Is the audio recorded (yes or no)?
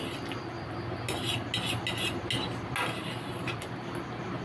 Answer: yes